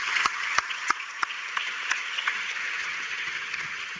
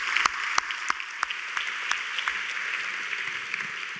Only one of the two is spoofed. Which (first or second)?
first